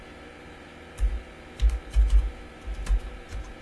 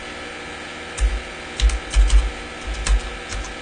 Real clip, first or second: second